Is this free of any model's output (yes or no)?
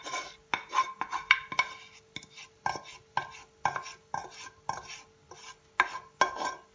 yes